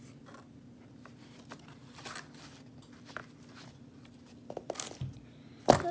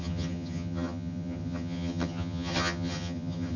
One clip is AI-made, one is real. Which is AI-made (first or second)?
second